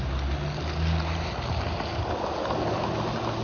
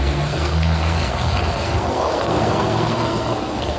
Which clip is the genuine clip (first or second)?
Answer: first